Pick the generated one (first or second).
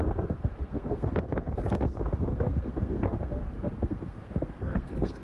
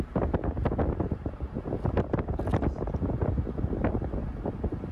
first